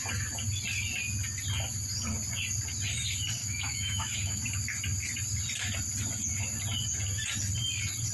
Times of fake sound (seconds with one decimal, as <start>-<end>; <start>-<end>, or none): 3.4-4.4